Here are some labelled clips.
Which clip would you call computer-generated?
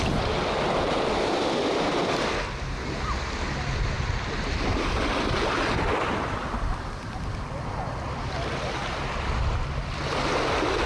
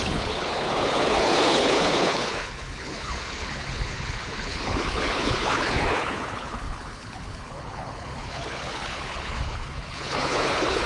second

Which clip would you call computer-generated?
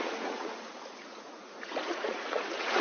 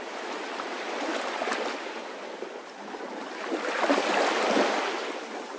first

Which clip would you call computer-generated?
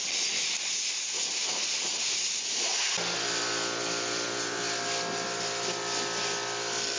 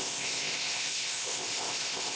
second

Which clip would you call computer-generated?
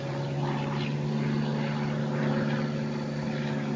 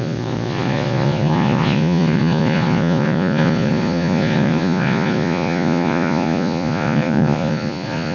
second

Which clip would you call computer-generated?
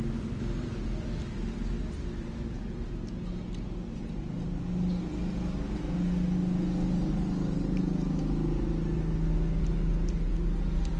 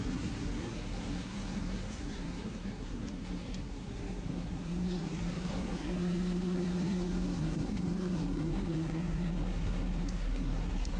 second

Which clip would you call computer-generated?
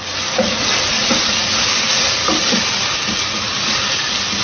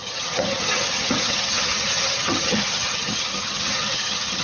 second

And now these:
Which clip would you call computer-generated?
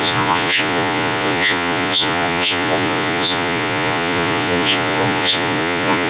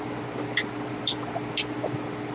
first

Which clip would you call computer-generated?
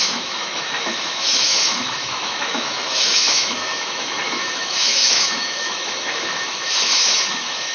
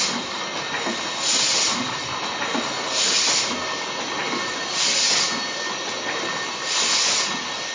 first